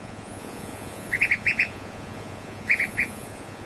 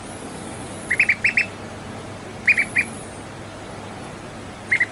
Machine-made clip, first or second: first